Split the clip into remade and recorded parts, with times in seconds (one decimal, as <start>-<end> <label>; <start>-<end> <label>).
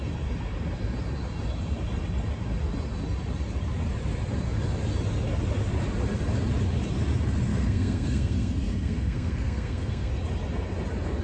0.0-7.5 recorded; 7.5-10.1 remade; 10.1-11.2 recorded